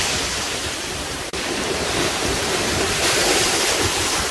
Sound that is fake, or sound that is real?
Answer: fake